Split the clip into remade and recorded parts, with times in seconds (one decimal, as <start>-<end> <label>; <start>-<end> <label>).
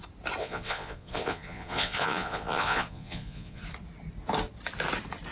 0.0-0.4 recorded; 0.4-3.6 remade; 3.6-5.3 recorded